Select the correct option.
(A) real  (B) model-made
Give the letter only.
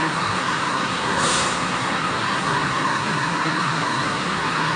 B